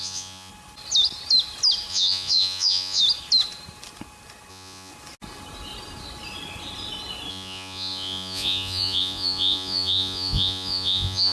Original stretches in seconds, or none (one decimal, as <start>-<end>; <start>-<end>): 0.5-1.9; 3.0-4.5; 4.9-7.3